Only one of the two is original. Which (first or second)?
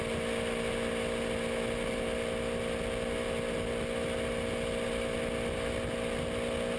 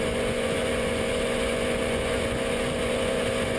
first